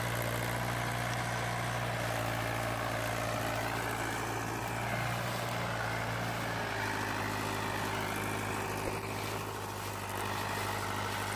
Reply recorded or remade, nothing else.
recorded